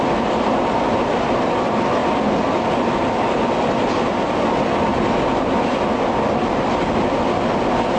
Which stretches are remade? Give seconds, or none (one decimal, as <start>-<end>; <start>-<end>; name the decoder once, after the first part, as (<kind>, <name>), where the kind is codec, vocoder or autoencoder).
none